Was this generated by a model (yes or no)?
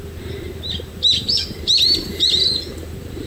no